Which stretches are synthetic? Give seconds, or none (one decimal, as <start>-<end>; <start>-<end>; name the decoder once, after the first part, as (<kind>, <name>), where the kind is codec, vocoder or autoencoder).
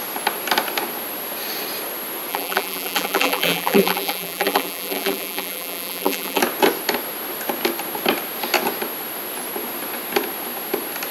2.3-6.4 (vocoder, BigVGAN v2)